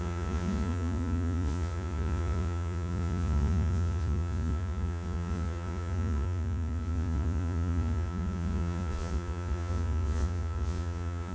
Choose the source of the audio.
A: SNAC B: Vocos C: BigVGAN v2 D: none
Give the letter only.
B